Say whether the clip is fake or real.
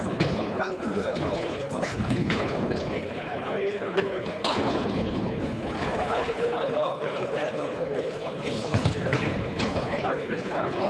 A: fake